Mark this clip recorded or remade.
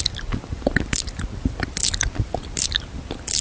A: recorded